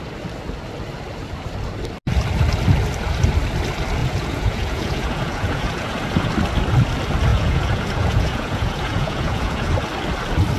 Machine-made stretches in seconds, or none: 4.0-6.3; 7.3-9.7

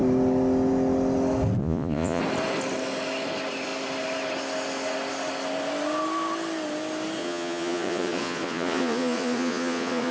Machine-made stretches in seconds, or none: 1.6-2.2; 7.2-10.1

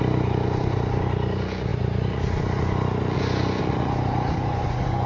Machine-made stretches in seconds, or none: 0.0-5.1

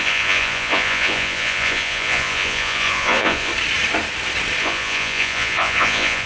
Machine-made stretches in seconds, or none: 0.0-3.5; 4.6-6.3